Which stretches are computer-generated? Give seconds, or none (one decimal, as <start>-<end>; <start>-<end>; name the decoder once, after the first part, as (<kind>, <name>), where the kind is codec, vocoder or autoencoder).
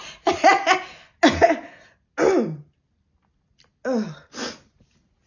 none